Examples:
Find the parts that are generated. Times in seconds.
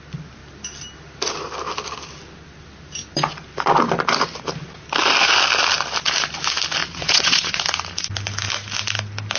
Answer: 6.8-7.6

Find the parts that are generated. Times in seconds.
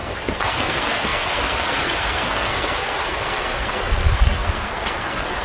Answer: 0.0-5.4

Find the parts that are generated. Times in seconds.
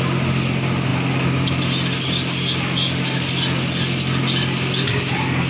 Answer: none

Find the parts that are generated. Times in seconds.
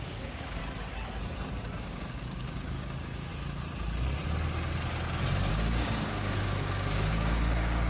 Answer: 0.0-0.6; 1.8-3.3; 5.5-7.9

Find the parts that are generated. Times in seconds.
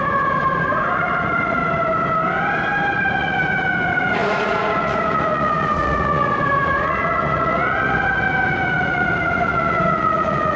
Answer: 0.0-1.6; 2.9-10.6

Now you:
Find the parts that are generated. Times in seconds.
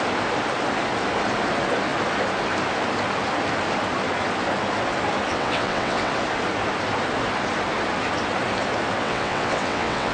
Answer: 5.3-6.1; 9.0-10.1